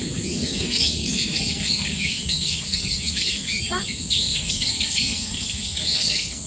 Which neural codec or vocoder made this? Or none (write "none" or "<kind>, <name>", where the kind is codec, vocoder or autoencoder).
codec, SNAC